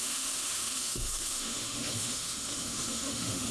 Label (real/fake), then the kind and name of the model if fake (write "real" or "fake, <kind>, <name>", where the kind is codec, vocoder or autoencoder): fake, autoencoder, DAC-VAE